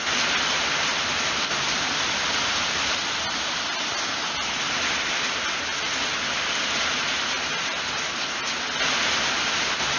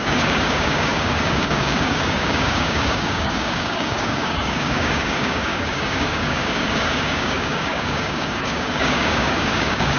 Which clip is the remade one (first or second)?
second